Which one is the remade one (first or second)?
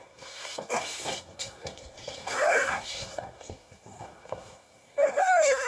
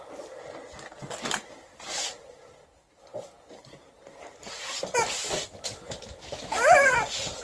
first